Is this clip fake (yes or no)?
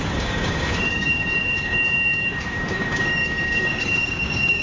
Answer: yes